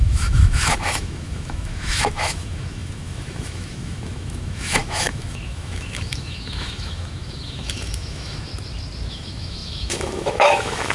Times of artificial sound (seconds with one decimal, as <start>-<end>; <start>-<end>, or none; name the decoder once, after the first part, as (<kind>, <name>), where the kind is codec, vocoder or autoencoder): 0.0-8.5 (autoencoder, DAC-VAE); 9.1-10.9